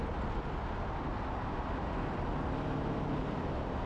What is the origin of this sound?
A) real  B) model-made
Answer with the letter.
A